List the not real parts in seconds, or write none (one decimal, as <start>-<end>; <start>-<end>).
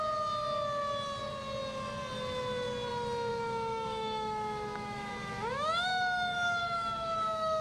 3.3-7.6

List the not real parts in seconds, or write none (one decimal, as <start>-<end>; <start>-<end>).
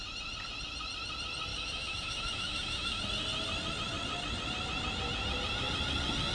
1.5-3.0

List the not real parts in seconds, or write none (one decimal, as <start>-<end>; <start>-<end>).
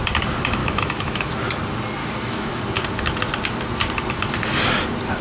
0.6-1.3; 2.0-2.6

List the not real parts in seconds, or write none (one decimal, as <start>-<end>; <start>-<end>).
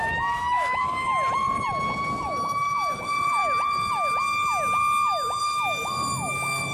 0.0-1.1; 2.3-3.4; 5.4-6.7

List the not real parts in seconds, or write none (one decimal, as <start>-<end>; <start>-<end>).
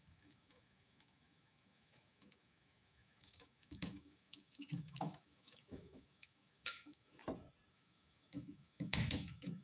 0.0-7.2; 7.7-9.6